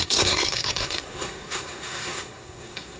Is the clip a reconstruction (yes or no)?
yes